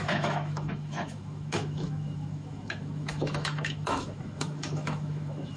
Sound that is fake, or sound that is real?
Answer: fake